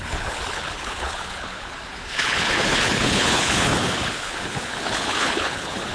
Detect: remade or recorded remade